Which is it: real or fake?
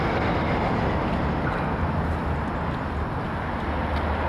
real